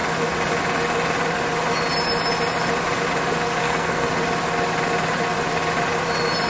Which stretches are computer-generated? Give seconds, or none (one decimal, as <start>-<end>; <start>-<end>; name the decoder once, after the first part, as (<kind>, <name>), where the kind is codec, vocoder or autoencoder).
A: 3.6-4.1 (codec, SNAC)